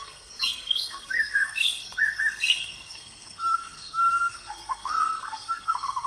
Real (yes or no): no